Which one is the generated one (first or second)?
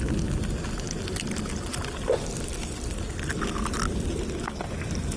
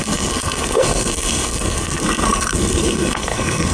second